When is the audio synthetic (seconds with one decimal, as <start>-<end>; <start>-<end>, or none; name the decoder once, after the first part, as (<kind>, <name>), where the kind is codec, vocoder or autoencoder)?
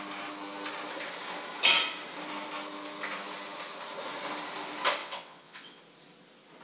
5.0-5.8 (vocoder, WaveNeXt)